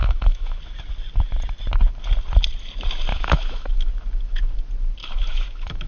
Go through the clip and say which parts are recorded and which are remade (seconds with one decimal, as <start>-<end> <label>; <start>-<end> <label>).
0.0-0.6 remade; 0.6-3.1 recorded; 3.1-3.9 remade; 3.9-5.0 recorded; 5.0-5.9 remade

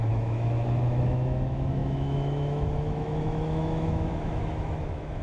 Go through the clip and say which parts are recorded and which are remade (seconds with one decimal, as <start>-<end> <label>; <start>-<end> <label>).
0.0-5.2 remade

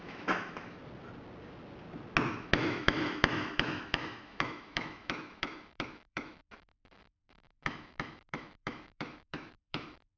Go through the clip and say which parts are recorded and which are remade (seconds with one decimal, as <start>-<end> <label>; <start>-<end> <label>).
0.0-0.8 remade; 0.8-2.3 recorded; 2.3-10.2 remade

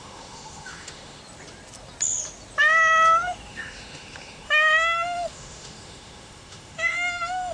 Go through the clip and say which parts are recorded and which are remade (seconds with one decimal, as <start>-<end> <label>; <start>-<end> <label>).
0.0-1.2 remade; 1.2-3.5 recorded; 3.5-7.5 remade

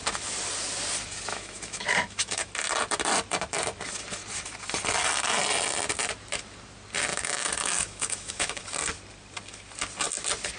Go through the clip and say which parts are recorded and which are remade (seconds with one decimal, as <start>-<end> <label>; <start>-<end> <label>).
0.0-1.3 recorded; 1.3-2.5 remade; 2.5-7.1 recorded; 7.1-8.6 remade; 8.6-10.6 recorded

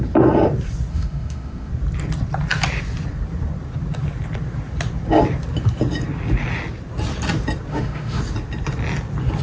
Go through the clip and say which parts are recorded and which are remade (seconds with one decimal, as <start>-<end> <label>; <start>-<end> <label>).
0.0-0.9 recorded; 0.9-1.7 remade; 1.7-7.7 recorded; 7.7-8.2 remade; 8.2-9.4 recorded

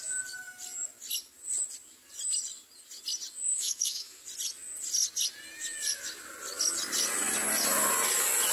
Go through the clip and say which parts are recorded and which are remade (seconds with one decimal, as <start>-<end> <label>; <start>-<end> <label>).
0.0-3.4 recorded; 3.4-4.2 remade; 4.2-8.5 recorded